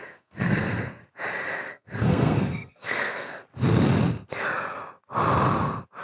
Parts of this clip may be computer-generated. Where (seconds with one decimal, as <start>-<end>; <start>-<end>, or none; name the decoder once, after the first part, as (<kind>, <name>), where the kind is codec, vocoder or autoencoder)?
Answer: 0.0-1.0 (codec, SNAC); 1.7-3.3